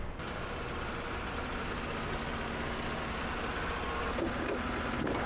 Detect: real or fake real